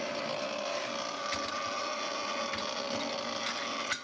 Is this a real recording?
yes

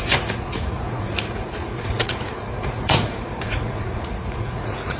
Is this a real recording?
no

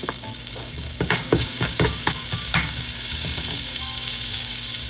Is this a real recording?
no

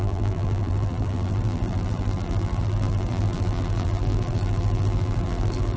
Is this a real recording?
no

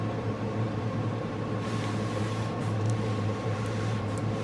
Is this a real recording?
no